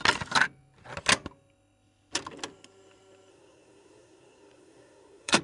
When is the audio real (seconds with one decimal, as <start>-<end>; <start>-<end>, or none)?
0.0-3.3